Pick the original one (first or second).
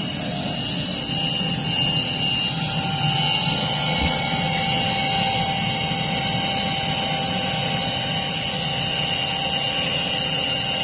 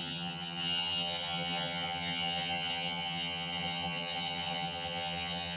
first